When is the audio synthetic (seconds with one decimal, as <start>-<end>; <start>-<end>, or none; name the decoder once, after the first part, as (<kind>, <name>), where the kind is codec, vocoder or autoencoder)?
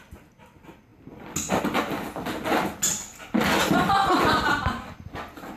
none